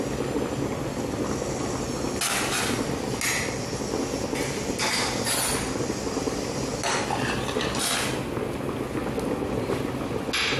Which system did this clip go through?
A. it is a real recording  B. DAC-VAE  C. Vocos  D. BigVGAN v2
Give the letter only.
A